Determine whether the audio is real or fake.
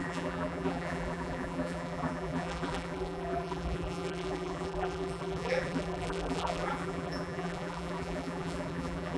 fake